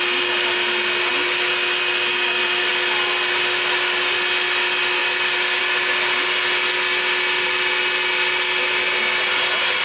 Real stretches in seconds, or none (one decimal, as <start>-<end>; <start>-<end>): 0.0-1.1; 2.7-5.0; 5.6-9.8